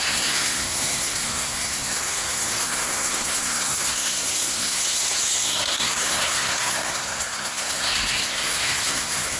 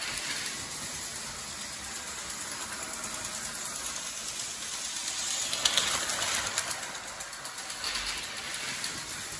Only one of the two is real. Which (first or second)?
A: second